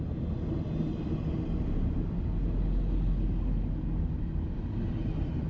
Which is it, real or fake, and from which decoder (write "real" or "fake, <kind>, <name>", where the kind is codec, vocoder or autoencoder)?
real